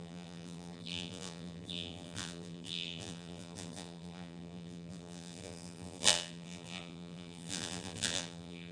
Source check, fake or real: fake